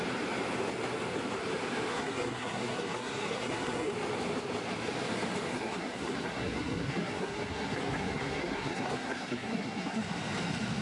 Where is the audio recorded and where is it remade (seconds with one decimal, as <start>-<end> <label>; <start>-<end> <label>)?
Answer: 0.0-1.9 recorded; 1.9-3.9 remade; 3.9-5.5 recorded; 5.5-10.0 remade; 10.0-10.8 recorded